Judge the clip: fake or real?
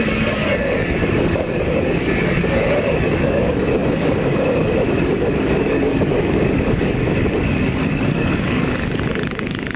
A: fake